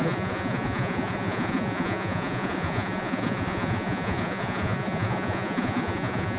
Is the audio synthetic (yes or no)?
yes